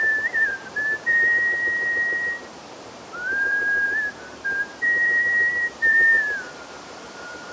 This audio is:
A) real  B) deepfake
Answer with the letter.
B